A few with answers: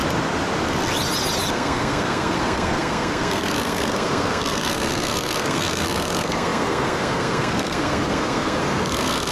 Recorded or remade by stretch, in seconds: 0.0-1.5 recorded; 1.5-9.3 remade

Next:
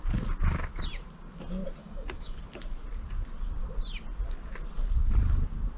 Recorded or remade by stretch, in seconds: 0.0-1.8 recorded; 1.8-2.4 remade; 2.4-5.8 recorded

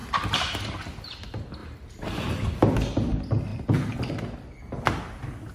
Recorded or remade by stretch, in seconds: 0.0-0.8 remade; 0.8-1.6 recorded; 1.6-2.3 remade; 2.3-3.5 recorded; 3.5-4.1 remade; 4.1-5.5 recorded

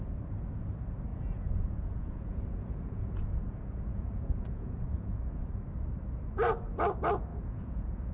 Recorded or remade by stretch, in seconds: 0.0-1.1 recorded; 1.1-5.5 remade; 5.5-7.3 recorded; 7.3-8.1 remade

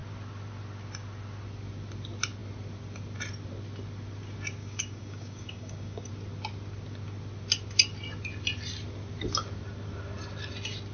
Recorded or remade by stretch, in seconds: 0.0-4.6 recorded; 4.6-6.1 remade; 6.1-10.9 recorded